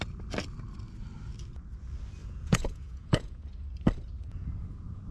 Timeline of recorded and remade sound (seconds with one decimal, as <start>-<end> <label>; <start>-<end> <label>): 0.0-2.2 recorded; 2.2-3.4 remade; 3.4-5.1 recorded